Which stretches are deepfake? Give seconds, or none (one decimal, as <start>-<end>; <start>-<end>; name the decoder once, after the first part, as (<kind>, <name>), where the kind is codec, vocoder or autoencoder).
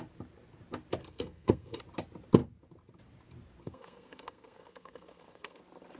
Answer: 1.0-1.8 (codec, SNAC); 3.6-5.6